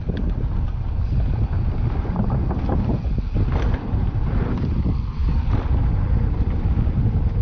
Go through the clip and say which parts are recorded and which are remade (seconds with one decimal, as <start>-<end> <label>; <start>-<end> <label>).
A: 0.0-7.4 recorded